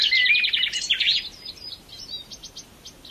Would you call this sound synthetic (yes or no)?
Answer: no